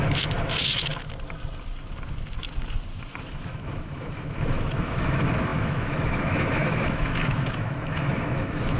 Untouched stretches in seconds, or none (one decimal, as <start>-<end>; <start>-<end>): 0.9-3.3

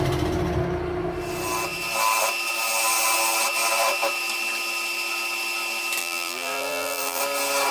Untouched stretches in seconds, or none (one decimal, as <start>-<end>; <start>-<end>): 0.0-6.0; 7.2-7.7

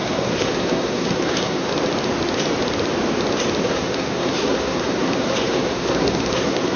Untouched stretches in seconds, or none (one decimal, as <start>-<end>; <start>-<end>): 1.7-3.6

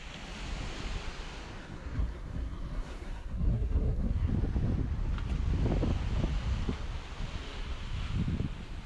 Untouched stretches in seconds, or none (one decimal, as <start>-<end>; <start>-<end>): 0.0-1.6; 4.3-8.9